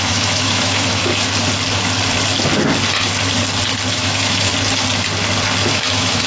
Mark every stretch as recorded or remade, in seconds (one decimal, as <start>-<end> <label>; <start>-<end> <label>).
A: 0.0-1.1 remade; 1.1-3.9 recorded; 3.9-4.5 remade; 4.5-5.7 recorded; 5.7-6.3 remade